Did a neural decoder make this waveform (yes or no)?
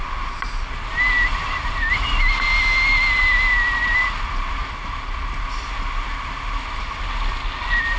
no